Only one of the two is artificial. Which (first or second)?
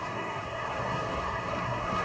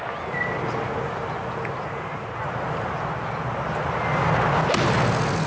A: first